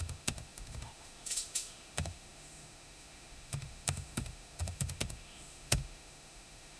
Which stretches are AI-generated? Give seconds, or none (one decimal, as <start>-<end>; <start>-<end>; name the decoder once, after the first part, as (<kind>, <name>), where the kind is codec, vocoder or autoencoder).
0.0-6.8 (autoencoder, DAC-VAE)